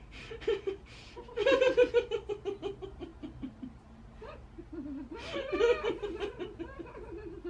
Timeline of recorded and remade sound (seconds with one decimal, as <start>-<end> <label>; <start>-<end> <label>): 0.0-7.5 recorded